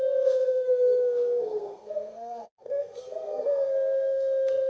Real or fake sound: fake